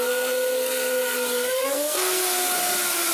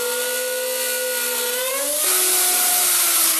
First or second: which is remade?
first